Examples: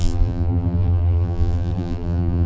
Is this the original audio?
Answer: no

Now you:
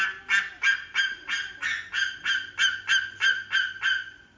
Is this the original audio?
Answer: yes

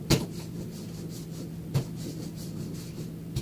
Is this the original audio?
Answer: yes